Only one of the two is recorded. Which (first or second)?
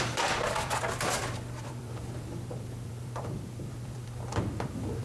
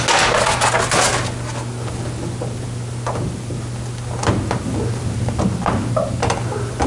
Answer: second